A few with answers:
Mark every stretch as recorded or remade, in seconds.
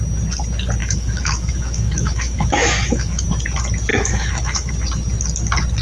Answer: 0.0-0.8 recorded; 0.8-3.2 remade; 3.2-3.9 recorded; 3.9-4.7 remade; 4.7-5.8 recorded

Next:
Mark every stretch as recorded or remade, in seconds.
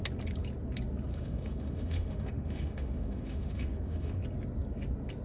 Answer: 0.0-1.1 recorded; 1.1-4.2 remade; 4.2-5.2 recorded